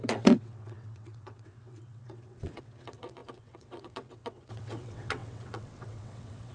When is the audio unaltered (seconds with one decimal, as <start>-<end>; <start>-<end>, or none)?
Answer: none